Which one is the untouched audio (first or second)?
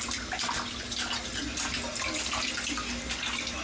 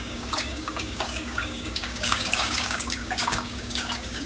first